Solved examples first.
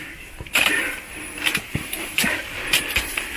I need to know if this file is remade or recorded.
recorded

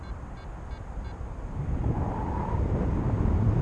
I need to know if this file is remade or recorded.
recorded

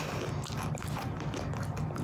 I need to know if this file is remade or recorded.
recorded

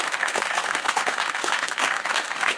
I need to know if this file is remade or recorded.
remade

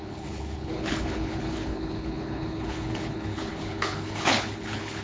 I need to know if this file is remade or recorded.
remade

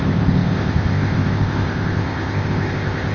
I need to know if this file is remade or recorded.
remade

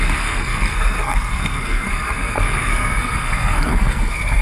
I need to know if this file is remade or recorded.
remade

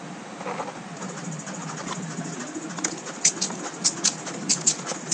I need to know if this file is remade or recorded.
recorded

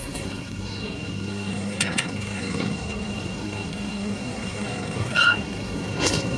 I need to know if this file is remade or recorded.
remade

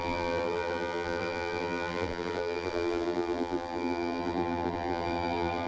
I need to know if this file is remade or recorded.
remade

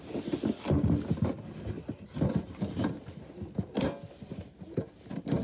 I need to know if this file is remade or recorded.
recorded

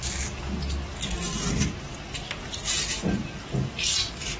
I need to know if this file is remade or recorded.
recorded